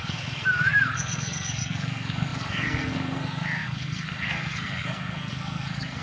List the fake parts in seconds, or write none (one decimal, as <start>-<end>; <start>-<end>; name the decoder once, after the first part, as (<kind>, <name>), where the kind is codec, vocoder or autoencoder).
0.0-6.0 (codec, SNAC)